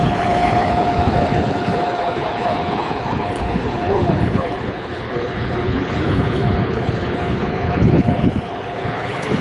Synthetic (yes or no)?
yes